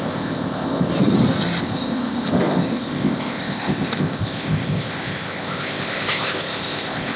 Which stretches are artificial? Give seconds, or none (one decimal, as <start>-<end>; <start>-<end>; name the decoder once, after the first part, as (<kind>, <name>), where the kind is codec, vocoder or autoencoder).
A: 0.0-0.9 (codec, ZipCodec); 1.6-7.2